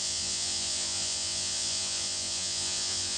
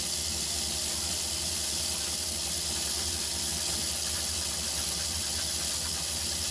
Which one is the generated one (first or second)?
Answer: first